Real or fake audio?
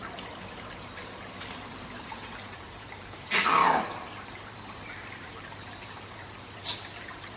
fake